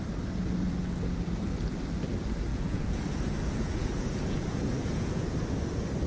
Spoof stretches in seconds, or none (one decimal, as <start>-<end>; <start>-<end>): 2.5-5.3